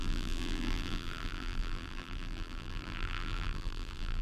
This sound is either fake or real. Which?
fake